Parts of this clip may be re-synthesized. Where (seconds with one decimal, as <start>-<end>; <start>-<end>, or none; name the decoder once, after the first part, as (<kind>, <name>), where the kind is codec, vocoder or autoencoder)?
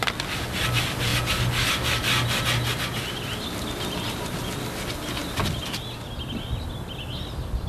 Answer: none